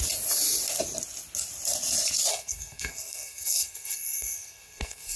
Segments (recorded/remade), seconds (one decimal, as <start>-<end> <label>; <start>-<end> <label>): 0.0-2.3 recorded; 2.3-5.2 remade